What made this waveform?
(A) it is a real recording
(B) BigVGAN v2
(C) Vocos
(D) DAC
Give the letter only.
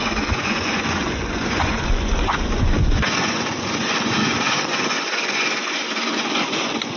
C